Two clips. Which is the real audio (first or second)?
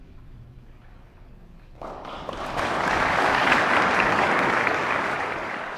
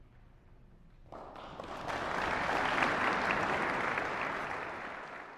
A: second